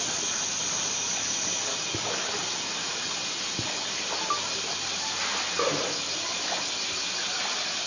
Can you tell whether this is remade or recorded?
recorded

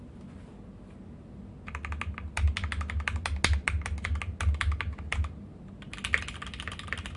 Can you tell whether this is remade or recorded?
recorded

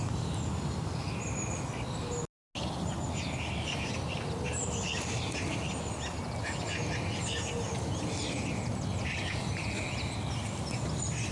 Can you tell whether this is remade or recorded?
recorded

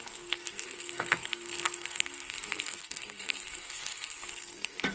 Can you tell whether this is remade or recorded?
remade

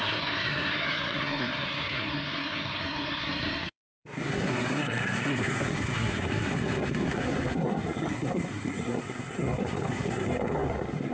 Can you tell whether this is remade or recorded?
remade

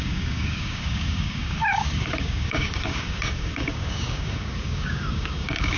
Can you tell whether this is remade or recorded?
remade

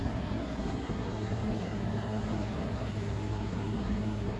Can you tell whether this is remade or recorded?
remade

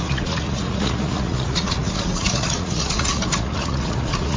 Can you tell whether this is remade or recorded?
remade